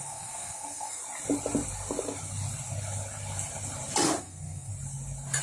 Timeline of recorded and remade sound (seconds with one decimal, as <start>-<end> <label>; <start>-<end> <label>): 0.0-1.0 remade; 1.0-4.2 recorded; 4.2-4.7 remade; 4.7-5.4 recorded